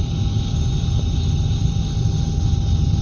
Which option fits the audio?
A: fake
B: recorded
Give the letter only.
B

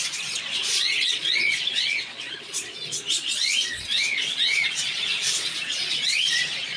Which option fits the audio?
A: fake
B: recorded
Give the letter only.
A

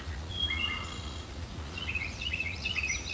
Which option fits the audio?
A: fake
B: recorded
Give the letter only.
A